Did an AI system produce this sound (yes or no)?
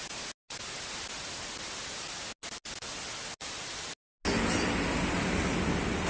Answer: no